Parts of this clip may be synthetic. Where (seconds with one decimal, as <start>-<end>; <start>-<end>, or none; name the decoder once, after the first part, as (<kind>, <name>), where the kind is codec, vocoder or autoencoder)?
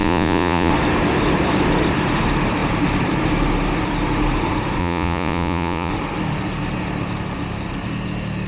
0.0-0.7 (vocoder, Vocos); 4.8-5.9